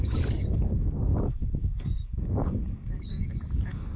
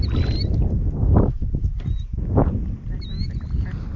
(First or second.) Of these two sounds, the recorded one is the second